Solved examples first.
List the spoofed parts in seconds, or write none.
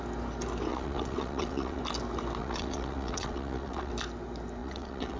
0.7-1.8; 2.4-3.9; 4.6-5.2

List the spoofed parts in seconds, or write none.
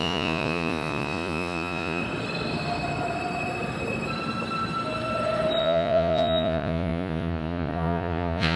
0.0-2.0; 5.6-8.6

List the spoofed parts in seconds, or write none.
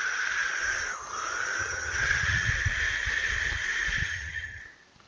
1.6-2.5; 4.0-4.6